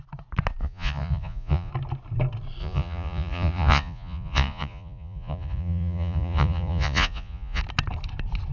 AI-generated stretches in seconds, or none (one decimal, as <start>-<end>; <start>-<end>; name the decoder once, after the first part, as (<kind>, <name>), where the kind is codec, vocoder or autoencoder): 0.6-1.7 (vocoder, Vocos); 2.6-7.6